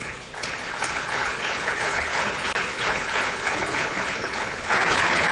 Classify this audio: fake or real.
fake